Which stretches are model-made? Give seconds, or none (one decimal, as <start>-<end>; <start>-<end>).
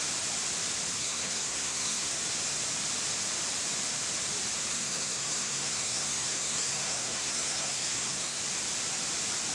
1.0-2.2; 4.7-8.4